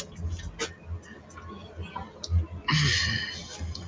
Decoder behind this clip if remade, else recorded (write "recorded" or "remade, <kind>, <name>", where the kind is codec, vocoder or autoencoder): recorded